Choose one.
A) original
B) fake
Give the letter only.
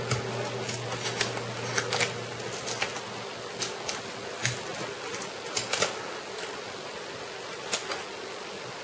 A